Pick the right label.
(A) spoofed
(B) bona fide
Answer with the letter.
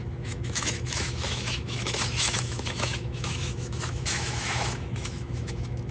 A